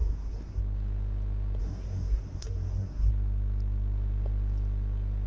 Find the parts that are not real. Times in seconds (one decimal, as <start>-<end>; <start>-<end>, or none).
0.0-0.6; 1.6-3.1